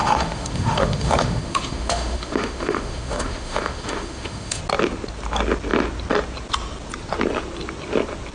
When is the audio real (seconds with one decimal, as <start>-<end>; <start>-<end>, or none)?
4.6-8.3